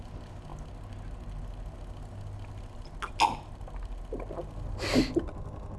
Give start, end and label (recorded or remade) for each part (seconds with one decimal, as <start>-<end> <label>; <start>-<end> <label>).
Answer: 0.0-5.8 recorded